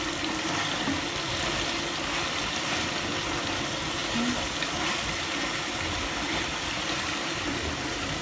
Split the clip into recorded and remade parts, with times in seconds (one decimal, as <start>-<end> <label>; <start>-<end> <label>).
0.0-8.2 recorded